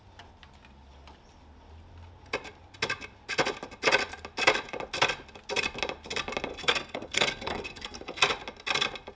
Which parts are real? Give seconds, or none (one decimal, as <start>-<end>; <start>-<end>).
0.0-6.5; 8.2-9.2